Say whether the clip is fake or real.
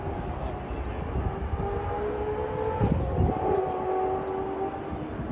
real